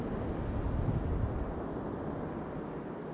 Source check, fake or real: real